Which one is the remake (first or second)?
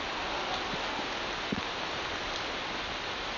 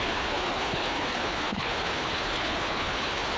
second